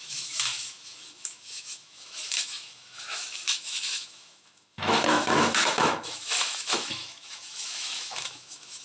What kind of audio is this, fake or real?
fake